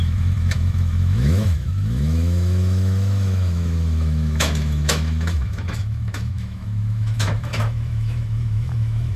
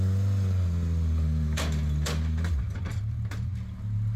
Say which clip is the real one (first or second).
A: second